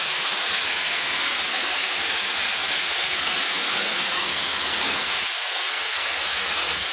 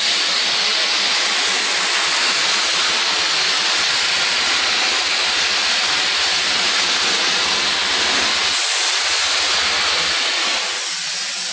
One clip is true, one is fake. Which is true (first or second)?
second